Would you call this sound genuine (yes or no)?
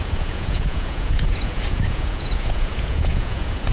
no